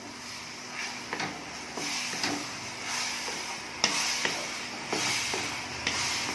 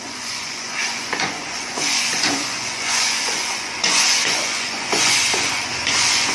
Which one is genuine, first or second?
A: first